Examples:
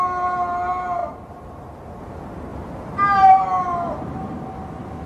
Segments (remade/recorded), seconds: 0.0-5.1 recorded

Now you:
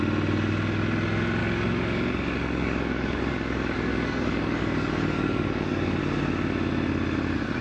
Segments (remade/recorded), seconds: 0.0-1.4 recorded; 1.4-6.0 remade; 6.0-7.6 recorded

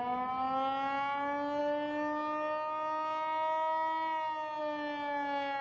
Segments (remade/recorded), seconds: 0.0-5.6 recorded

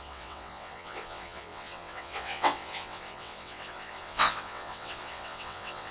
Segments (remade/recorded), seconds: 0.0-5.9 remade